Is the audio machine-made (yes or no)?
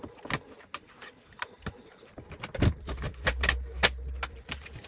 no